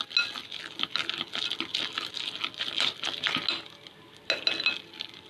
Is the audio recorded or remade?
recorded